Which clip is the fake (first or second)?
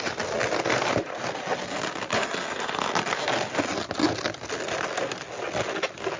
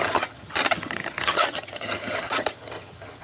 second